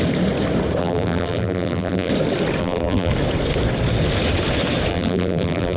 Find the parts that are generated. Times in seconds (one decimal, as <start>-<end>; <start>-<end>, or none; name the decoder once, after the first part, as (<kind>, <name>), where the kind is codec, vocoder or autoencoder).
0.8-2.1 (vocoder, BigVGAN v2); 2.6-3.1; 4.9-5.8